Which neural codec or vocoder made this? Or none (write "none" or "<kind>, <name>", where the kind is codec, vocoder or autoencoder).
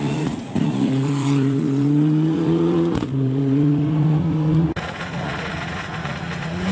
vocoder, Vocos